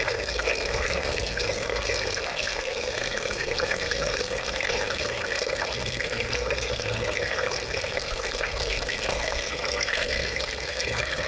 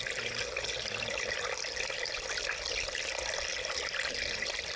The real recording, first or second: second